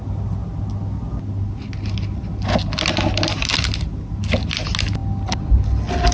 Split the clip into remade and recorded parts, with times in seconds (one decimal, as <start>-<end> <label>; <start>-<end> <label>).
0.0-6.1 recorded